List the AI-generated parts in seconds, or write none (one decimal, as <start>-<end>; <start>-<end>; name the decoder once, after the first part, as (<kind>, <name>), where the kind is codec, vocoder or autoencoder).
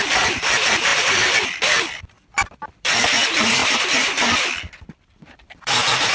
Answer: 0.0-3.6 (vocoder, BigVGAN v2); 4.8-6.1